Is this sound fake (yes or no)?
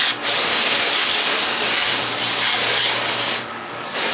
yes